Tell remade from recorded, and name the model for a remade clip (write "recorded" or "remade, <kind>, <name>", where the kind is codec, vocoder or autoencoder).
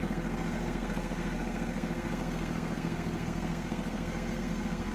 remade, codec, SNAC